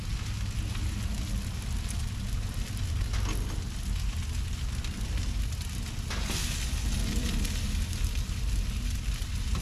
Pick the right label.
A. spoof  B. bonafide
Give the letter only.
B